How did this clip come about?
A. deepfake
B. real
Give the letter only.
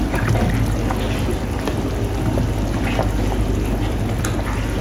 B